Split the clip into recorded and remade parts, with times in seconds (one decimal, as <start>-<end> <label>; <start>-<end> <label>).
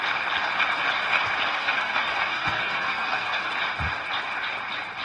0.0-1.5 recorded; 1.5-3.5 remade; 3.5-5.0 recorded